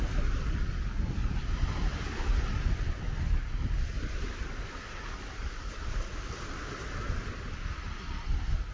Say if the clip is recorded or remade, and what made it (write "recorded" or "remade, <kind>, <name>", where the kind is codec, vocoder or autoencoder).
recorded